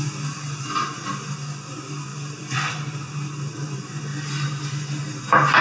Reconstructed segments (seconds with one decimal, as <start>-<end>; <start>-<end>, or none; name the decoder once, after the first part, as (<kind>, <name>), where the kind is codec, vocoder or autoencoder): 2.1-2.9 (vocoder, BigVGAN v2)